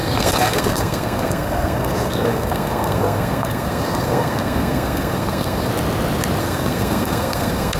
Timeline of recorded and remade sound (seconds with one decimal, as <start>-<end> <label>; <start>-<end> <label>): 0.0-5.7 remade; 5.7-6.4 recorded; 6.4-7.8 remade